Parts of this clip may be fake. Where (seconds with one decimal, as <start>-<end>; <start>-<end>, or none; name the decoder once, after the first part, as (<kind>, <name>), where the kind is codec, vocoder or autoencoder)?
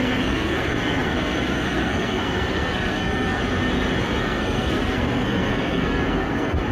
0.0-3.4 (codec, SNAC); 4.2-6.7